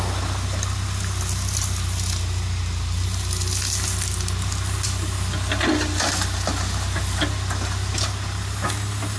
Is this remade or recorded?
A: recorded